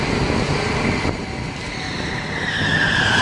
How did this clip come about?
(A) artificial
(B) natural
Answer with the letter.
B